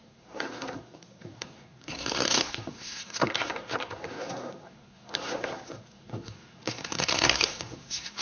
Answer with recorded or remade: remade